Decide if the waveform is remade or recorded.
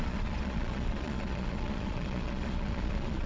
remade